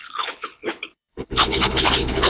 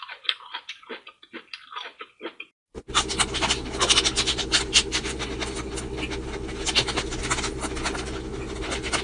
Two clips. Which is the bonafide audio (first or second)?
second